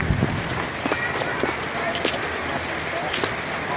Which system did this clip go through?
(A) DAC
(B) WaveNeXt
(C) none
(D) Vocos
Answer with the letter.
C